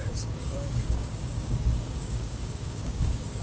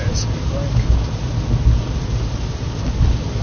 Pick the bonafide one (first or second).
second